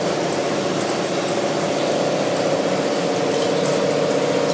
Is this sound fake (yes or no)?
no